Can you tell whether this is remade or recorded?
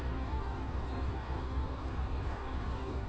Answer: remade